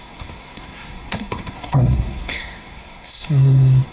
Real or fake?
fake